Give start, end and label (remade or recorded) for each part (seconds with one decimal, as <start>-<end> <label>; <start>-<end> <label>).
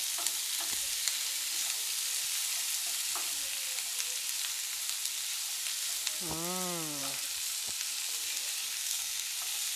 0.0-8.8 recorded; 8.8-9.3 remade; 9.3-9.8 recorded